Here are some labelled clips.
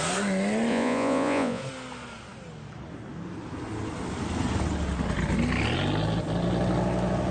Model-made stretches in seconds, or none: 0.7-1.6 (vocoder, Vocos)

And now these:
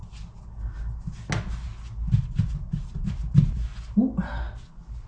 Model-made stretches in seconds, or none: none

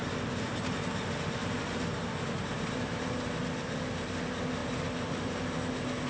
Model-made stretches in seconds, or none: 1.4-3.2 (vocoder, BigVGAN v2); 4.6-5.4

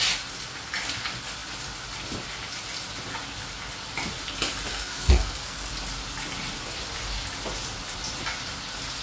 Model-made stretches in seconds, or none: 4.7-5.7 (codec, SNAC)

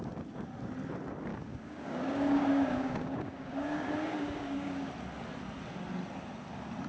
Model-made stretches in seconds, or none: 1.3-4.9 (codec, DAC)

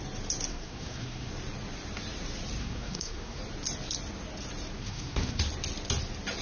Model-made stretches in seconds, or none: 0.5-1.3 (codec, SNAC); 2.6-3.4; 4.8-5.4

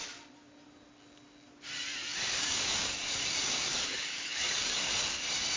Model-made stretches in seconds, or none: 2.1-4.9 (codec, DAC)

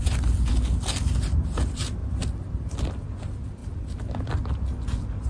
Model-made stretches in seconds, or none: 0.0-0.5 (vocoder, BigVGAN v2); 2.0-2.9; 3.6-4.5